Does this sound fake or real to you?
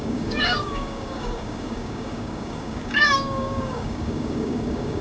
fake